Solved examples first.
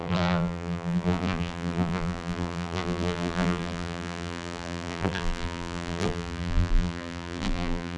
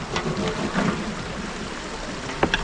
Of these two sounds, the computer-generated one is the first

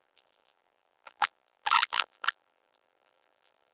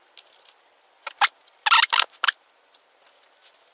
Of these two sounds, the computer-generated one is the first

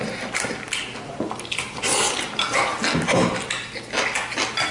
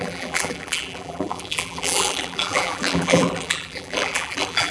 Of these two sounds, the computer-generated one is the second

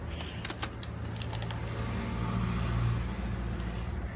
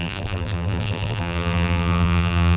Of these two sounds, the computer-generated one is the second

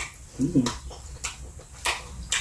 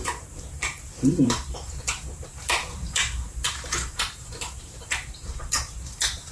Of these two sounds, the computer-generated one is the second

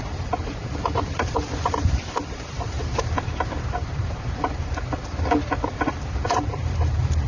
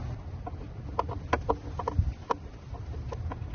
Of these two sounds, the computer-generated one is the first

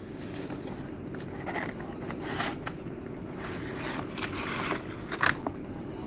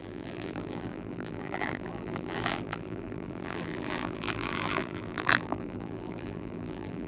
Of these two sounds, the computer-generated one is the second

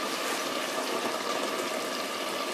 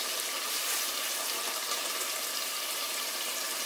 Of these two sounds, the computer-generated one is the second